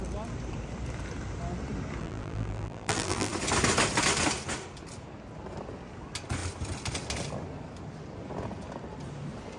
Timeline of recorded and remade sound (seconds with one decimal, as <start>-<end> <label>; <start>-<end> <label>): 0.0-2.0 recorded; 2.0-3.3 remade; 3.3-9.6 recorded

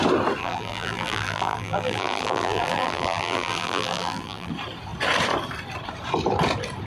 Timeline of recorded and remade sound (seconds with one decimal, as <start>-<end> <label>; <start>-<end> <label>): 0.0-0.4 recorded; 0.4-4.5 remade; 4.5-6.9 recorded

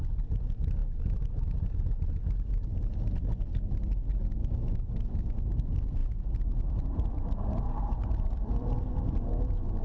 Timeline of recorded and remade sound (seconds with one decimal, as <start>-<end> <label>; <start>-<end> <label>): 0.0-2.7 recorded; 2.7-3.3 remade; 3.3-6.0 recorded; 6.0-8.6 remade; 8.6-9.8 recorded

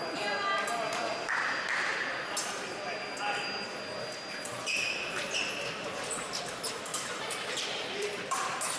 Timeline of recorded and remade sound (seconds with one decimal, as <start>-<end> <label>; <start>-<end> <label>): 0.0-1.9 recorded; 1.9-2.8 remade; 2.8-6.9 recorded; 6.9-8.2 remade; 8.2-8.8 recorded